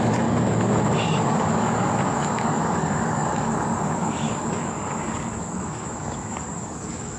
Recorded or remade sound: remade